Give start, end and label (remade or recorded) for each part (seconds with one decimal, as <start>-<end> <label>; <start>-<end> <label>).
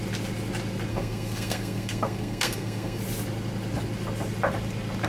0.0-0.9 recorded; 0.9-3.0 remade; 3.0-5.1 recorded